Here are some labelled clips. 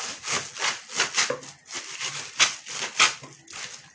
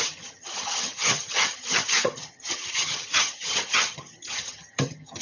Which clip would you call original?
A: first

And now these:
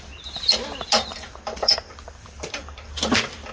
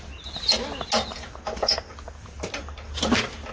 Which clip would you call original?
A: second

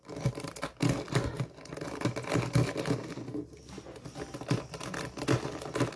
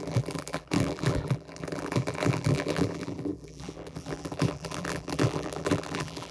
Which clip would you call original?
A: first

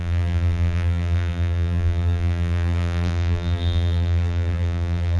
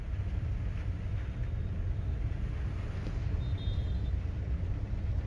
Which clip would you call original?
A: second